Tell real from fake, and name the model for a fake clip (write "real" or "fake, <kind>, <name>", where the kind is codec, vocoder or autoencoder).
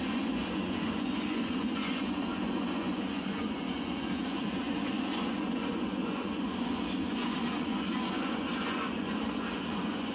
fake, vocoder, Vocos